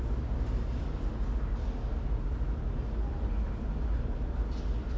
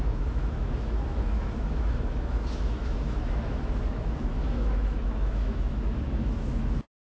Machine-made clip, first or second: second